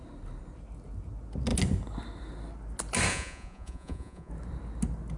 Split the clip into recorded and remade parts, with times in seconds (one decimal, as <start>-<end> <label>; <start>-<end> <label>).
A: 0.0-3.1 recorded; 3.1-4.3 remade; 4.3-5.2 recorded